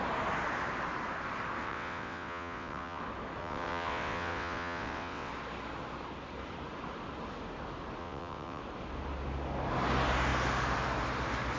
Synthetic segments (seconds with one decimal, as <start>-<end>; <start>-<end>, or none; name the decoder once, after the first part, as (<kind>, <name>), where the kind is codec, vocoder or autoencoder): 1.6-3.0 (vocoder, WaveNeXt); 3.4-5.3; 8.0-8.6

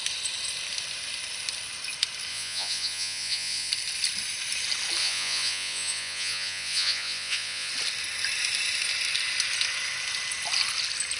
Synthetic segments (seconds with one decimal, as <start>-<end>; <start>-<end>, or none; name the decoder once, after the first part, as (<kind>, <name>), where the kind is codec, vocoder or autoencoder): 2.3-3.7 (vocoder, Vocos); 5.0-7.7